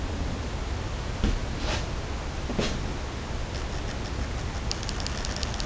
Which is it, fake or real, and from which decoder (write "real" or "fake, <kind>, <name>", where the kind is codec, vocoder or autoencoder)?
real